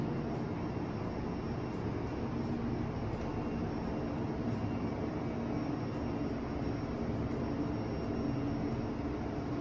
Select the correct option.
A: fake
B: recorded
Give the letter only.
B